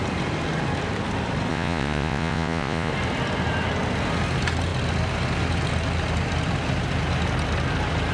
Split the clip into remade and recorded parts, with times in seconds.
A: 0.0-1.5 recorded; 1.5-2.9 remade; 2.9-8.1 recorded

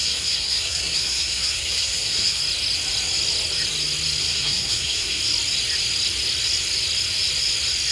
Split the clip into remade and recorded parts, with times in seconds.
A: 0.0-2.4 remade; 2.4-4.2 recorded; 4.2-5.2 remade; 5.2-7.9 recorded

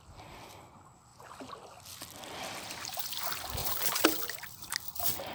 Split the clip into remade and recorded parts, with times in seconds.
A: 0.0-3.6 recorded; 3.6-4.6 remade; 4.6-5.3 recorded

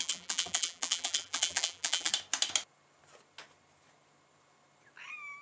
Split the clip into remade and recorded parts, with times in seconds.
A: 0.0-2.1 remade; 2.1-5.4 recorded

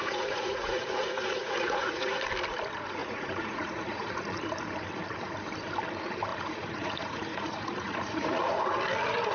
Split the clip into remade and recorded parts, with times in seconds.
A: 0.0-2.2 remade; 2.2-3.0 recorded; 3.0-4.4 remade; 4.4-6.3 recorded; 6.3-8.8 remade; 8.8-9.3 recorded

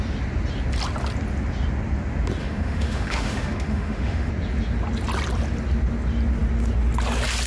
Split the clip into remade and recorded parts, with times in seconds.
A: 0.0-2.4 recorded; 2.4-4.3 remade; 4.3-7.5 recorded